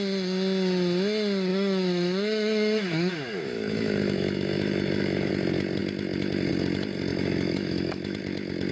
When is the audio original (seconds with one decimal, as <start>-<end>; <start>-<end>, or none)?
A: 0.0-1.5; 5.3-7.1; 8.2-8.7